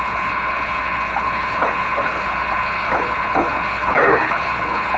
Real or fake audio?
fake